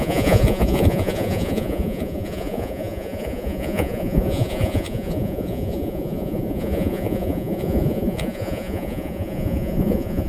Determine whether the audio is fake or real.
fake